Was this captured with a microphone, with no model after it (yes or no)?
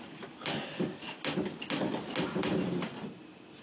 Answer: yes